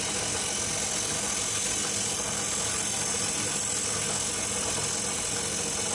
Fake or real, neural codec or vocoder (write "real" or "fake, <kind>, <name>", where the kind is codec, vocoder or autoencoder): real